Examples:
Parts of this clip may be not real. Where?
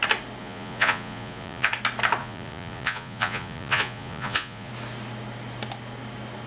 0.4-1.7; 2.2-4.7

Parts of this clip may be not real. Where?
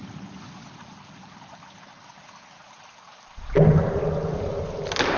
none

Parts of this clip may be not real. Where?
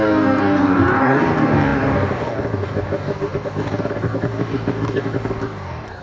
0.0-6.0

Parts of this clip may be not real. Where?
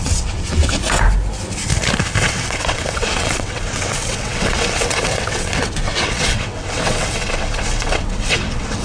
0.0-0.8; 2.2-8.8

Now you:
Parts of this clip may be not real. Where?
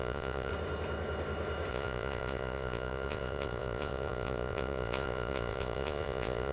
0.0-0.5; 1.7-6.5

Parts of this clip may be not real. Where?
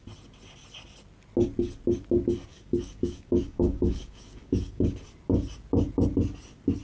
2.5-4.9